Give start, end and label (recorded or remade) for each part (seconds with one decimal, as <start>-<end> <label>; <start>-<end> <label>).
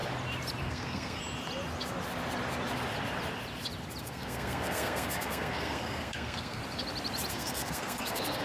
0.0-0.6 recorded; 0.6-1.2 remade; 1.2-4.0 recorded; 4.0-6.6 remade; 6.6-7.3 recorded; 7.3-8.4 remade